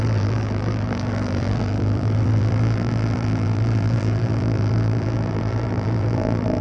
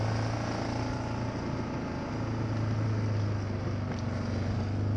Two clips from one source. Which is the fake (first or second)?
first